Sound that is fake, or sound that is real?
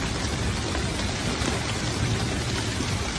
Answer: real